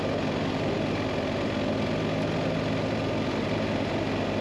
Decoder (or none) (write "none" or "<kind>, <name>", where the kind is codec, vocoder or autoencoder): none